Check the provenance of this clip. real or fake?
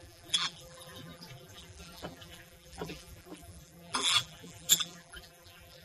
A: fake